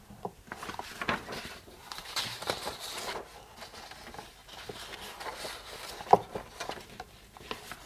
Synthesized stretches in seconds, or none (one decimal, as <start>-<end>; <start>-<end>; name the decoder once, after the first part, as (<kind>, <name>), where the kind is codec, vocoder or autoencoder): 0.9-2.7 (vocoder, BigVGAN v2); 4.4-5.0